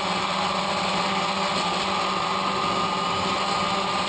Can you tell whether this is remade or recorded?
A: recorded